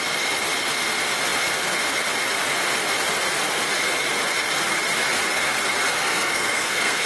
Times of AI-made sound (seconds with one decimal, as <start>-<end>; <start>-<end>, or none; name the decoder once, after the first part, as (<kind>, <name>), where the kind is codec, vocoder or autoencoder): 6.0-7.1 (codec, SNAC)